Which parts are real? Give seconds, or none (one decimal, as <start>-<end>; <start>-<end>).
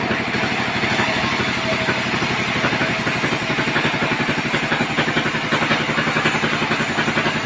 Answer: 0.0-7.5